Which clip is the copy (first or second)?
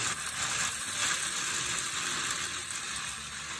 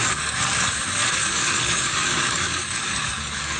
second